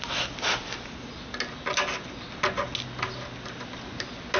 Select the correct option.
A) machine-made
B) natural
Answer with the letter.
B